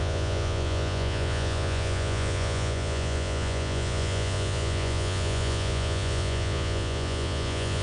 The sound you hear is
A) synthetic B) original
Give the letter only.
A